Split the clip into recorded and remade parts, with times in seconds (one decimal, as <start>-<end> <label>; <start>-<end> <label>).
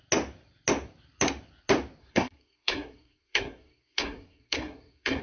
0.0-2.0 recorded; 2.0-5.2 remade